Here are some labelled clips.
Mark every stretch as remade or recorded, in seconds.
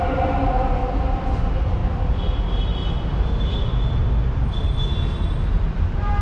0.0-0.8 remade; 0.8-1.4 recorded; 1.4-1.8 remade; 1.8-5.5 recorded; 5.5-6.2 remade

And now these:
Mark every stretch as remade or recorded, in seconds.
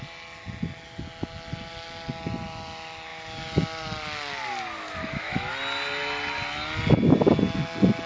0.0-5.0 recorded; 5.0-5.5 remade; 5.5-8.1 recorded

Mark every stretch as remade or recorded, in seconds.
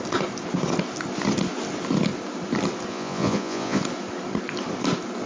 0.0-2.9 recorded; 2.9-3.8 remade; 3.8-5.3 recorded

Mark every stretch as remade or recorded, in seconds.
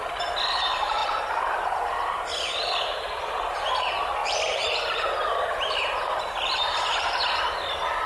0.0-1.0 recorded; 1.0-3.6 remade; 3.6-4.2 recorded; 4.2-7.4 remade; 7.4-8.1 recorded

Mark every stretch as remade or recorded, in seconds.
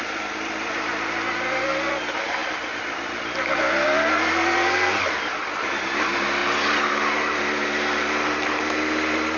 0.0-9.4 recorded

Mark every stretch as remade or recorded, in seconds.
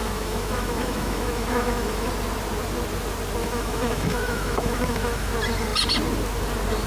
0.0-2.1 remade; 2.1-3.4 recorded; 3.4-5.3 remade; 5.3-6.9 recorded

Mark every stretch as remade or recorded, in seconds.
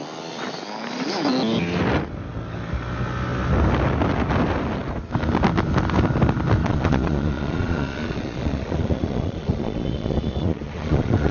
0.0-6.6 recorded; 6.6-11.3 remade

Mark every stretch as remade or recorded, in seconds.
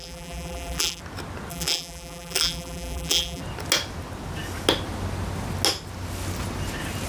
0.0-1.0 remade; 1.0-1.5 recorded; 1.5-3.4 remade; 3.4-7.1 recorded